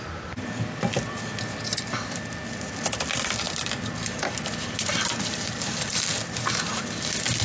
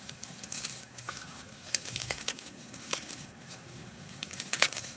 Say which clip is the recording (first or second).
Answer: first